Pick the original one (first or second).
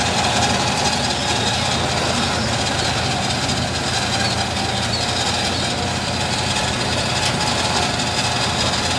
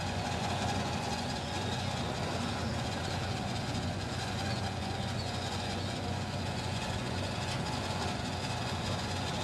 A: first